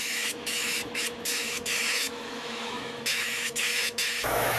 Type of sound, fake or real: fake